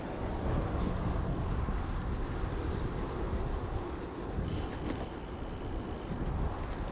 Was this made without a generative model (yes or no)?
yes